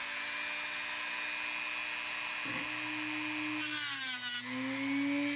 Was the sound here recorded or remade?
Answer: recorded